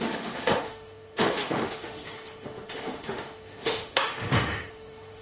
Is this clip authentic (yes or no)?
no